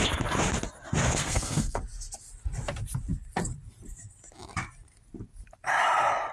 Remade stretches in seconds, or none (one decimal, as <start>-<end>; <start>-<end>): 1.2-1.8